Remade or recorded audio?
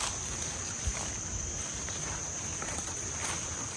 remade